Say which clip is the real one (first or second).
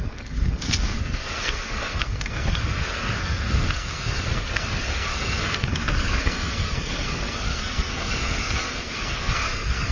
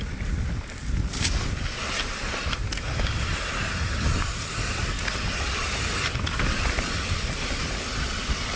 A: second